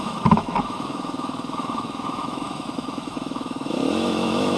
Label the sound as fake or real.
fake